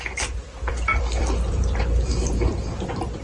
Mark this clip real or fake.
fake